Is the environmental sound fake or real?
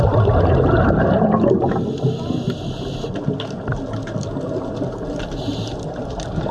real